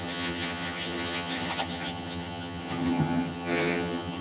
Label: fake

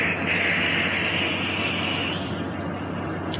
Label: real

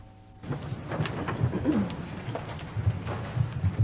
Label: real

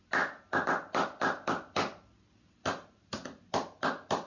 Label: real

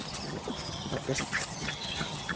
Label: fake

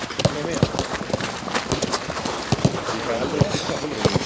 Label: real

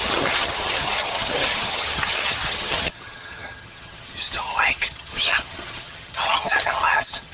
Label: fake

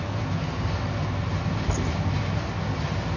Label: real